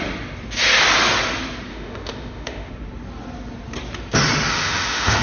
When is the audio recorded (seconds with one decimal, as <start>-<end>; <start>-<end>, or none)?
0.0-1.7; 2.7-4.5